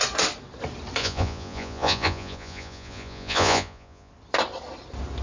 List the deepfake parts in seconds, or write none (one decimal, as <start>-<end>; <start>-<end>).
1.0-4.1